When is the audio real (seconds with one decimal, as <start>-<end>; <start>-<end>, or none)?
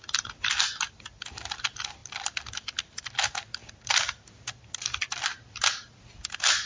0.0-6.7